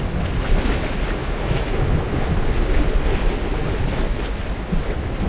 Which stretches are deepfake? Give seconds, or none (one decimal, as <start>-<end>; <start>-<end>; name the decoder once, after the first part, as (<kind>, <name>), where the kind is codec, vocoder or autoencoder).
none